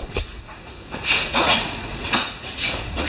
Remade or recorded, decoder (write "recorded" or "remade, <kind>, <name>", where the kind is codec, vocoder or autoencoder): remade, vocoder, Vocos